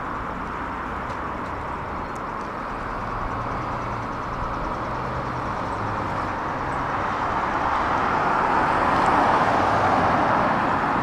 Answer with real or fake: real